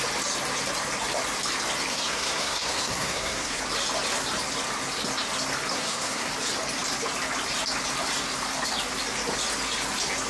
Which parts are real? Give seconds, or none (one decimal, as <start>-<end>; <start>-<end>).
0.0-1.9; 3.6-5.7; 6.3-10.3

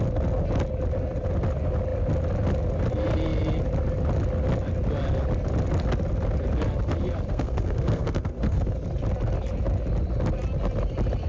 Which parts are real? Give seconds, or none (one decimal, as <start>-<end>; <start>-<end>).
0.0-7.3; 8.6-11.3

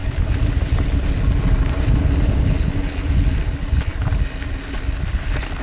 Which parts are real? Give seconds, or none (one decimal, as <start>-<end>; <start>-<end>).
0.0-5.6

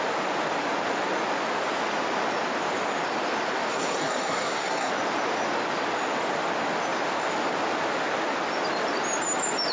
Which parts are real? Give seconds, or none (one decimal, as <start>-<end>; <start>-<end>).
0.0-3.7; 4.9-9.7

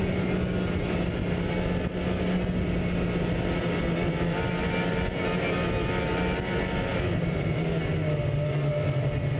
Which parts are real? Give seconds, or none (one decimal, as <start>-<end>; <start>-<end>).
0.0-9.4